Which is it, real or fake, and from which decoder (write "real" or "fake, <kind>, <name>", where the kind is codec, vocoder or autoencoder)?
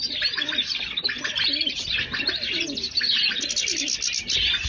real